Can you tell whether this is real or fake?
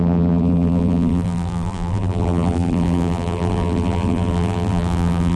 fake